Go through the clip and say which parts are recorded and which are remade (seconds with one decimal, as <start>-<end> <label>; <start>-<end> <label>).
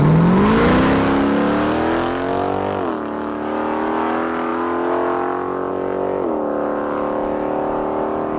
0.0-8.4 recorded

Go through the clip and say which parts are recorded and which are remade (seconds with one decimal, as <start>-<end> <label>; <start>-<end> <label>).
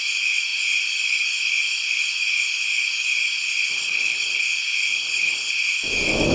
0.0-3.7 recorded; 3.7-4.4 remade; 4.4-4.9 recorded; 4.9-5.5 remade; 5.5-6.3 recorded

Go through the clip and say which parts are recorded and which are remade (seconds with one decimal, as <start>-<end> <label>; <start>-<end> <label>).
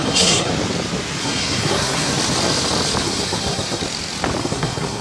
0.0-0.5 remade; 0.5-1.2 recorded; 1.2-2.1 remade; 2.1-3.0 recorded; 3.0-3.8 remade; 3.8-4.4 recorded; 4.4-5.0 remade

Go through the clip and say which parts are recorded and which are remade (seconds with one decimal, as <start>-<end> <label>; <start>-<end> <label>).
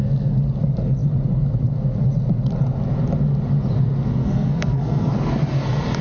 0.0-4.2 recorded; 4.2-5.1 remade; 5.1-6.0 recorded